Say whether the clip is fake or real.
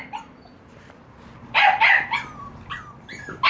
real